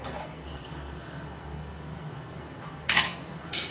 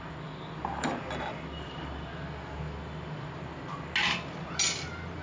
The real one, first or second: second